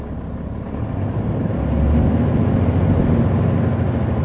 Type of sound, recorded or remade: recorded